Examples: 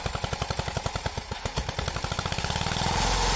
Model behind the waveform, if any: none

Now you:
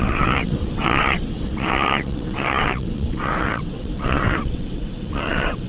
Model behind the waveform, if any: vocoder, WaveNeXt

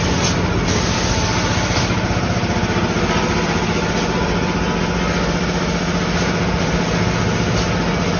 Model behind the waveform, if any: none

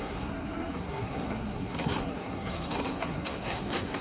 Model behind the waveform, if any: codec, SNAC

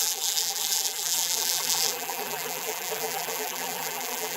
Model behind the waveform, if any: vocoder, BigVGAN v2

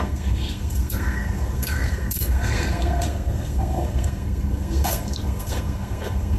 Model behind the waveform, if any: codec, SNAC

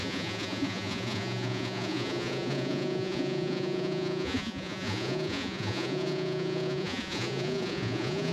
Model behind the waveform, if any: vocoder, Vocos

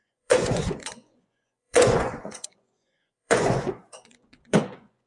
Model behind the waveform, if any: vocoder, Vocos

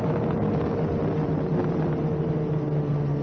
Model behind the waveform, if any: none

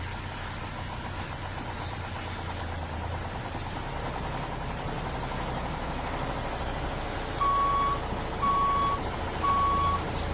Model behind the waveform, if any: none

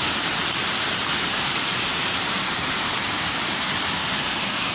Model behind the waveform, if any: vocoder, BigVGAN v2